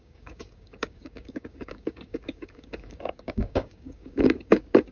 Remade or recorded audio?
remade